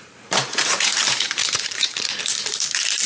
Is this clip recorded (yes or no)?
no